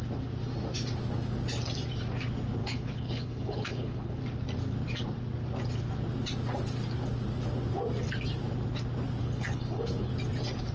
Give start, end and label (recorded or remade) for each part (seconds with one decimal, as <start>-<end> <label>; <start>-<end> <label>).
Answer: 0.0-2.6 recorded; 2.6-4.2 remade; 4.2-9.2 recorded; 9.2-10.1 remade; 10.1-10.7 recorded

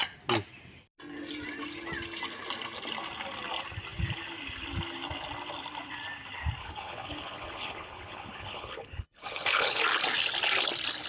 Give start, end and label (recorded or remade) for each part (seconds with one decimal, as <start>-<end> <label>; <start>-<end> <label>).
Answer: 0.0-6.6 recorded; 6.6-9.8 remade; 9.8-11.1 recorded

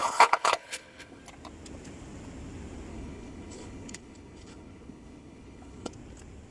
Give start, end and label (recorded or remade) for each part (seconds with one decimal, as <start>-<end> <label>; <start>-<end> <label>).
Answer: 0.0-1.2 remade; 1.2-2.9 recorded; 2.9-5.9 remade; 5.9-6.5 recorded

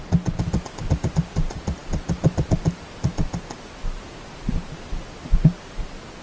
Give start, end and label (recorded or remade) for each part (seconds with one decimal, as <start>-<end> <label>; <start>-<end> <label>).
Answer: 0.0-6.2 recorded

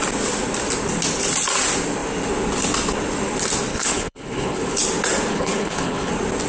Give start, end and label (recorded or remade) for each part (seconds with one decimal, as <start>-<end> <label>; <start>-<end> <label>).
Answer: 0.0-3.7 recorded; 3.7-4.8 remade; 4.8-5.3 recorded; 5.3-6.1 remade; 6.1-6.5 recorded